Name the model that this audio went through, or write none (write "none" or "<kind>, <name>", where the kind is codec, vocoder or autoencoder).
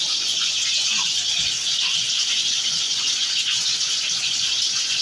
vocoder, Vocos